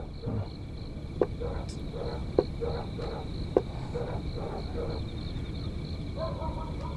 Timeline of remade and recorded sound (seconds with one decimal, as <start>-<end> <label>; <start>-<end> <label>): 0.0-7.0 recorded